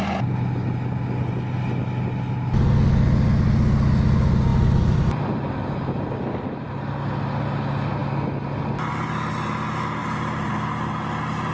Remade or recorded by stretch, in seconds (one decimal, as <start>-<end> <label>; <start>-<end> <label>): 0.0-4.5 recorded; 4.5-6.7 remade; 6.7-10.0 recorded; 10.0-10.5 remade; 10.5-11.5 recorded